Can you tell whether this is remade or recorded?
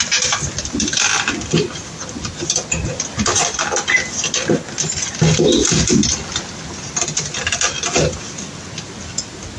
recorded